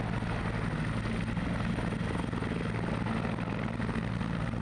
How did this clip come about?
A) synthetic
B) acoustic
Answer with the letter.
B